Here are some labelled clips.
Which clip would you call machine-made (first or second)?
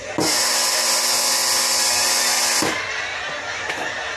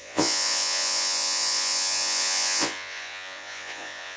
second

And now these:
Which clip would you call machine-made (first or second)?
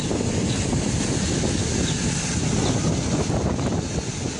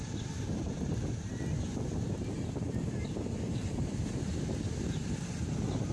second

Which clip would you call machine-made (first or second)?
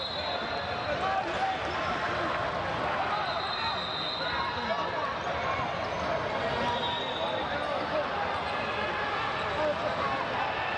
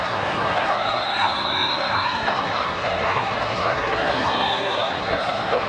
second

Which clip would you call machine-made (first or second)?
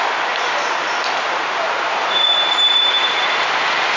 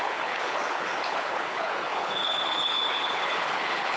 second